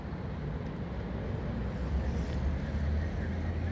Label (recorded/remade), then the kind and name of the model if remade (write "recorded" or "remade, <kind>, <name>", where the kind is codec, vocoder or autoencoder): recorded